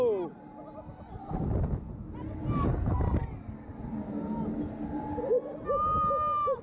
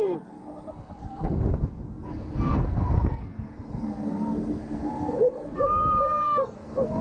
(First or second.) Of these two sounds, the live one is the first